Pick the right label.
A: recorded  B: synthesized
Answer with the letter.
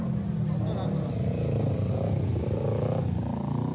A